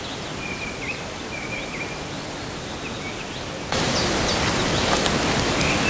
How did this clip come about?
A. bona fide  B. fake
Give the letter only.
A